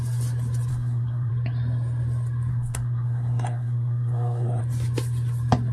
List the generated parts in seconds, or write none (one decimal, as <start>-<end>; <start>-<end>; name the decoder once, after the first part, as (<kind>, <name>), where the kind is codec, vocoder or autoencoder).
0.7-1.3 (codec, SNAC); 2.5-4.6